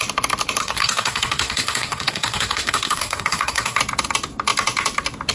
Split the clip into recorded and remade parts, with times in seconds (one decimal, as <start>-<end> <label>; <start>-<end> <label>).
0.0-0.6 recorded; 0.6-3.8 remade; 3.8-5.3 recorded